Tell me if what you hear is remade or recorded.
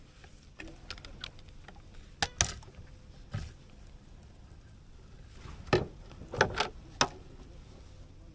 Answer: recorded